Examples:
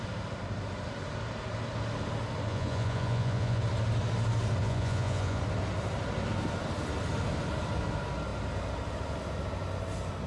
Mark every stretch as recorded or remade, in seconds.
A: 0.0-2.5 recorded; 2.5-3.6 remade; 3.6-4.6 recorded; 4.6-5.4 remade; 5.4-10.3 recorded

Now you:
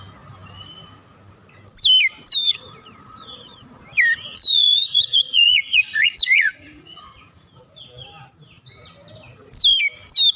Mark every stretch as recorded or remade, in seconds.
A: 0.0-2.4 recorded; 2.4-3.8 remade; 3.8-4.3 recorded; 4.3-7.5 remade; 7.5-10.4 recorded

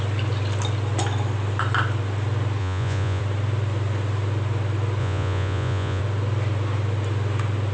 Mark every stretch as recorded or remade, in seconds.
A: 0.0-2.6 recorded; 2.6-3.2 remade; 3.2-5.0 recorded; 5.0-6.0 remade; 6.0-7.7 recorded